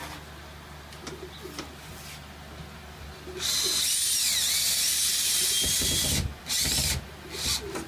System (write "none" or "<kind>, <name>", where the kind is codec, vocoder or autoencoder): none